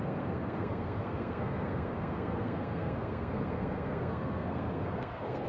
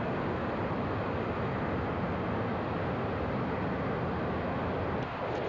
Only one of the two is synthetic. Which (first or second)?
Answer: first